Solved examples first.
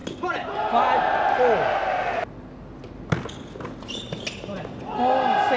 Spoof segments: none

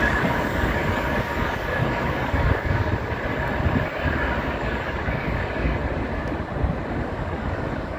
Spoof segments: 0.0-2.9 (codec, DAC); 4.4-5.8; 6.9-8.0

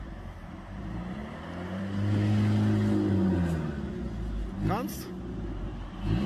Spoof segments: 0.0-1.2 (vocoder, BigVGAN v2); 5.0-6.3

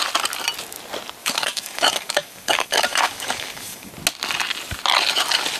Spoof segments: 1.2-3.9 (codec, DAC)